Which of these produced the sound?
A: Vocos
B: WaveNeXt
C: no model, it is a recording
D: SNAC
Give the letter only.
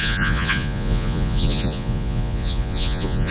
A